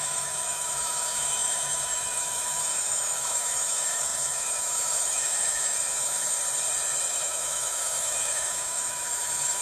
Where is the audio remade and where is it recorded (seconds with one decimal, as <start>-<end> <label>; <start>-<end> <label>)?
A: 0.0-6.4 remade; 6.4-7.1 recorded; 7.1-9.6 remade